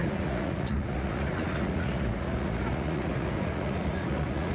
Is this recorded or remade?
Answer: remade